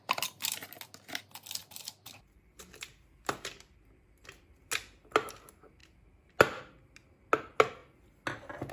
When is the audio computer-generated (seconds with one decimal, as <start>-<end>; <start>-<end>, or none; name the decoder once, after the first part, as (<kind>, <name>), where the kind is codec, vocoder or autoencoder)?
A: 1.6-4.7 (vocoder, BigVGAN v2)